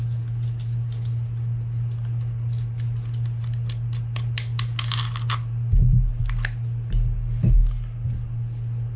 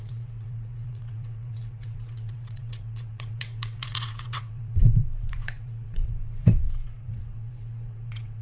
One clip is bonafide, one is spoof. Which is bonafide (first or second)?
first